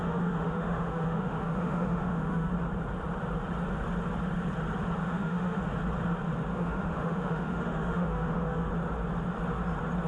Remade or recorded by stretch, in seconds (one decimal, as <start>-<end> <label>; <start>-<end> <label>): 0.0-2.5 remade; 2.5-5.0 recorded; 5.0-5.6 remade; 5.6-6.5 recorded; 6.5-8.7 remade; 8.7-10.1 recorded